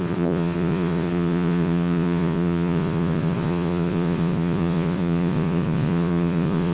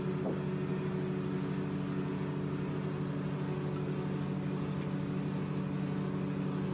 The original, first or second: second